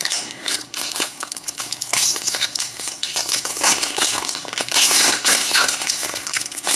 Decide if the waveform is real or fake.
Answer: fake